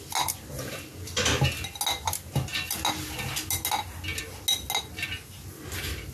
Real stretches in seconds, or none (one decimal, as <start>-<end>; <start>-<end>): 0.0-6.1